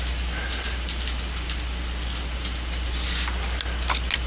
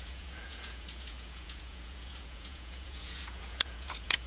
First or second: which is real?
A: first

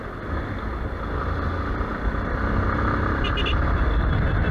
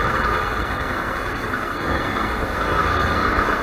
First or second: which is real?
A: first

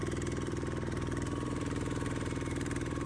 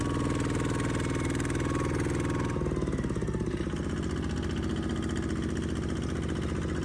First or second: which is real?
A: second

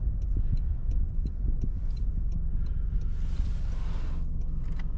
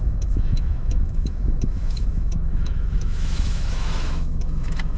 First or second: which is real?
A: first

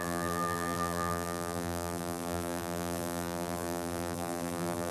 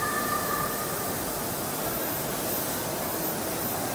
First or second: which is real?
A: second